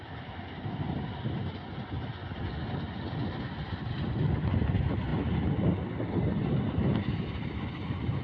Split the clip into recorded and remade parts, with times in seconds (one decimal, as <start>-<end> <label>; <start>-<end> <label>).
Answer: 0.0-8.2 recorded